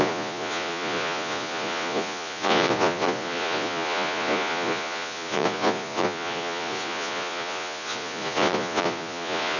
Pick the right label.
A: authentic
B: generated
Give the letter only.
B